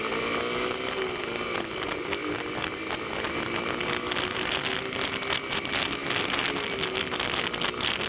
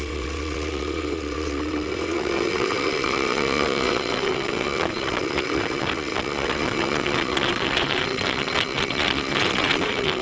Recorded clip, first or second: first